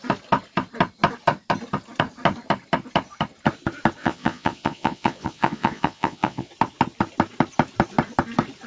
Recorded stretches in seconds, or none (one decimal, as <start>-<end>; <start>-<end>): 0.0-4.0; 6.5-8.7